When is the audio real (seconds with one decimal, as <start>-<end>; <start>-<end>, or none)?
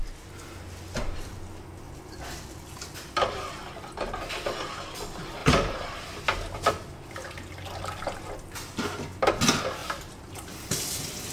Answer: 0.0-5.4; 6.7-9.8